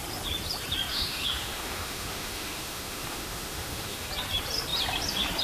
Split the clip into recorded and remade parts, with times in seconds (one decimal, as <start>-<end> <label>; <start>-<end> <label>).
0.0-0.9 recorded; 0.9-4.1 remade; 4.1-5.4 recorded